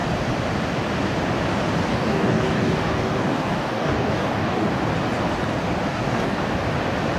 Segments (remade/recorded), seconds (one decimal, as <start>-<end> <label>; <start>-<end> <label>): 0.0-1.9 recorded; 1.9-4.7 remade; 4.7-5.9 recorded; 5.9-6.4 remade; 6.4-7.2 recorded

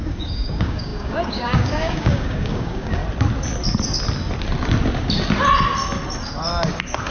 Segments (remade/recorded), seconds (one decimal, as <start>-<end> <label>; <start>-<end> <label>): 0.0-3.0 remade; 3.0-7.1 recorded

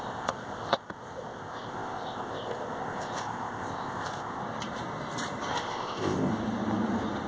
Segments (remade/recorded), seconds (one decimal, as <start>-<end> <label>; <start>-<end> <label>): 0.0-4.4 remade; 4.4-5.6 recorded; 5.6-6.3 remade; 6.3-7.3 recorded

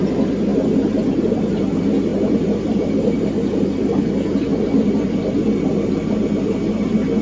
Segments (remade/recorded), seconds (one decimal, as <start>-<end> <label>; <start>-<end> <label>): 0.0-7.2 recorded

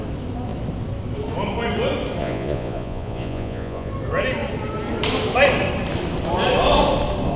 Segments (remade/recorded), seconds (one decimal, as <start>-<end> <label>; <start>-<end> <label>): 0.0-2.2 recorded; 2.2-3.9 remade; 3.9-7.4 recorded

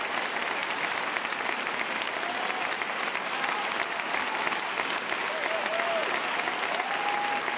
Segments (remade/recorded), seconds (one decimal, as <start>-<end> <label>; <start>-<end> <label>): 0.0-7.6 recorded

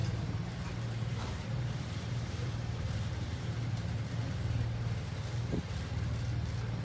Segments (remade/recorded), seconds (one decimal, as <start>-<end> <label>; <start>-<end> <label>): 0.0-4.1 remade; 4.1-6.8 recorded